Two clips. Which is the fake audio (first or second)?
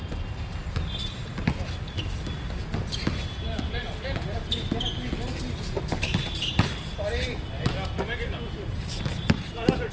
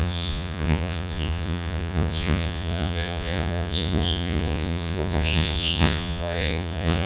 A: second